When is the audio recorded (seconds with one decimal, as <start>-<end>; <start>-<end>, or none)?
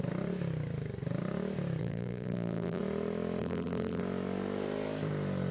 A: 0.0-1.8; 2.8-3.4; 4.0-5.5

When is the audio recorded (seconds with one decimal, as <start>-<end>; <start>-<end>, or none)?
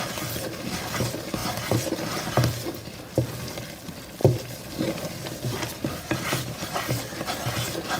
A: 0.0-1.4; 2.3-4.2; 6.7-8.0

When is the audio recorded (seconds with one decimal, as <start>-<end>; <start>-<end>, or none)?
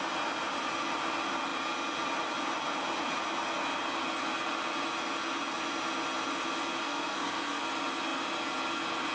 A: 0.0-6.8; 7.6-9.1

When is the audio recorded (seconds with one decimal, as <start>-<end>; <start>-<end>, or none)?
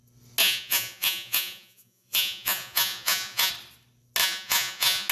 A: 0.0-0.4; 3.5-4.2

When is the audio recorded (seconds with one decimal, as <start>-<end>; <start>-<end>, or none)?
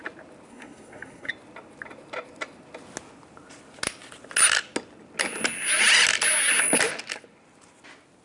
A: 0.0-0.5; 1.3-8.2